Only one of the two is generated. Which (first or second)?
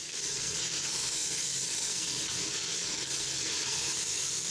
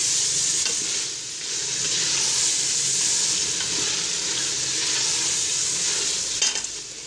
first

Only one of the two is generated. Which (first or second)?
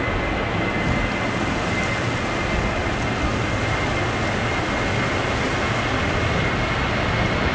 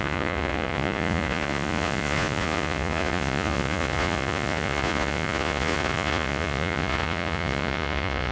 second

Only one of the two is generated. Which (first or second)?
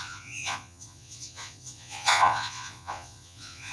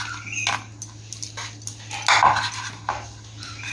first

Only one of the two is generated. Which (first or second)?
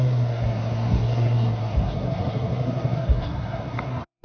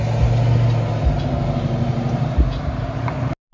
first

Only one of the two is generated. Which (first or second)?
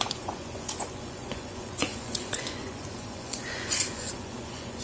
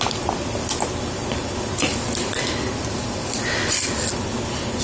first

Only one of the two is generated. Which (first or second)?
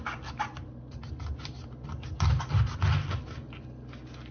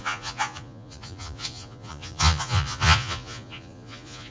second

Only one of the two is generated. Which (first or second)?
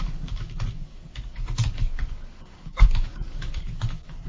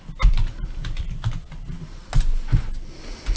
first